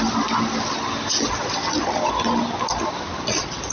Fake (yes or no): no